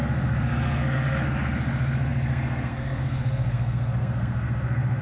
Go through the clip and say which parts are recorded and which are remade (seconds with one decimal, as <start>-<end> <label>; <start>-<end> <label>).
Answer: 0.0-5.0 remade